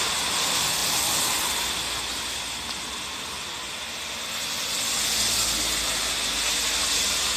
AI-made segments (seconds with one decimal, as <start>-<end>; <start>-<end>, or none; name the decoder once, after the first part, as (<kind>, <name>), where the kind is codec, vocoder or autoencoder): none